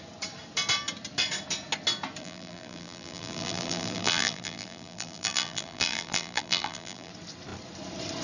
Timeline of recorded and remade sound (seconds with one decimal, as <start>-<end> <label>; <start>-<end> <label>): 0.0-2.2 recorded; 2.2-7.1 remade; 7.1-8.2 recorded